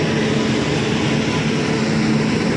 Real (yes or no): yes